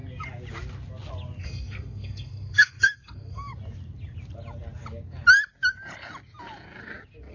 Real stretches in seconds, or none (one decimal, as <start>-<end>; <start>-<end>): 0.0-1.4; 3.5-7.3